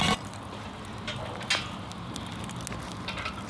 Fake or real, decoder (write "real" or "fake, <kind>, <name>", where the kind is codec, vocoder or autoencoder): real